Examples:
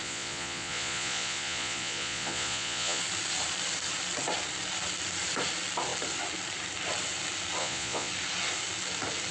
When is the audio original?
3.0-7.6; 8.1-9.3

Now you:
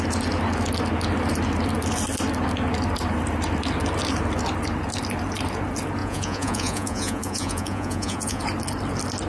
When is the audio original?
0.0-6.0; 8.4-9.3

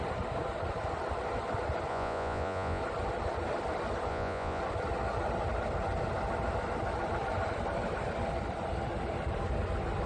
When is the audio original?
0.0-1.9; 2.8-4.1; 4.6-10.1

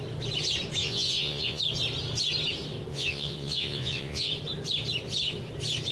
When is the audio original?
0.0-0.8; 1.6-2.9; 4.3-5.9

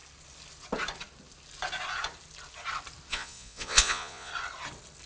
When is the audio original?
0.0-3.1; 4.3-5.1

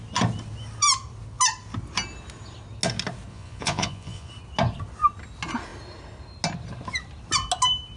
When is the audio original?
0.0-3.3; 4.3-8.0

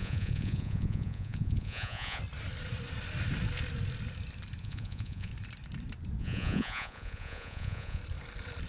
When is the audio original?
2.2-4.6; 5.3-6.2; 8.0-8.7

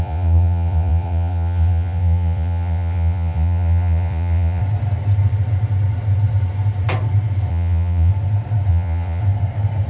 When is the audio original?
4.6-7.5; 8.1-8.7; 9.2-9.9